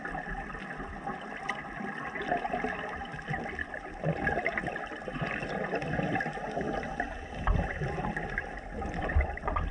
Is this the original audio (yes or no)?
yes